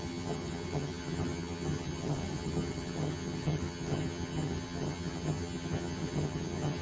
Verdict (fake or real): fake